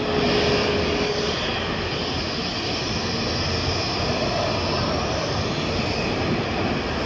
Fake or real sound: real